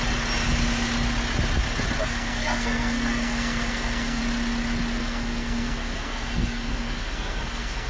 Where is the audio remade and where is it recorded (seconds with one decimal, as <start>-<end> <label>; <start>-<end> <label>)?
0.0-2.0 recorded; 2.0-4.2 remade; 4.2-5.0 recorded; 5.0-7.9 remade